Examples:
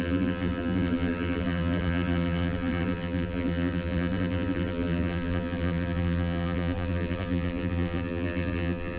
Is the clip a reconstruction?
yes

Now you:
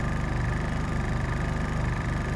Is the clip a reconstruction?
yes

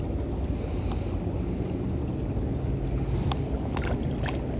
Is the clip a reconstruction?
no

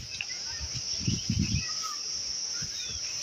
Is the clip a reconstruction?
no